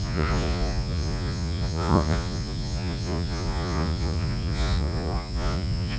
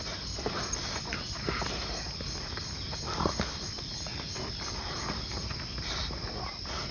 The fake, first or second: first